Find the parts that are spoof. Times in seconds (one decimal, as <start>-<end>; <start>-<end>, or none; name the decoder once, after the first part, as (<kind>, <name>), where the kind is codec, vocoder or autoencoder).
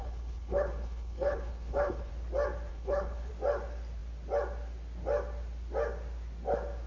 0.0-2.1 (codec, HILCodec); 2.7-3.3